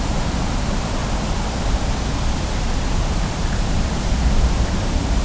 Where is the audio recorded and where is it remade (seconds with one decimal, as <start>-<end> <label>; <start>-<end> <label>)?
0.0-5.2 remade